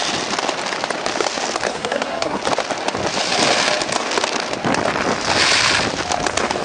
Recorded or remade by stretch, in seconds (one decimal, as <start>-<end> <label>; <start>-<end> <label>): 0.0-1.7 recorded; 1.7-2.4 remade; 2.4-6.6 recorded